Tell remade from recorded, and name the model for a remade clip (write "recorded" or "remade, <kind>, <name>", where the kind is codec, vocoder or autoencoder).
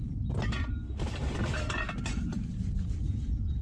remade, vocoder, BigVGAN v2